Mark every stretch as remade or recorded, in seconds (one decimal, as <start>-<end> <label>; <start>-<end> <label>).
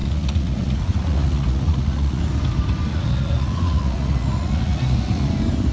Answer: 0.0-2.2 remade; 2.2-2.9 recorded; 2.9-5.3 remade; 5.3-5.7 recorded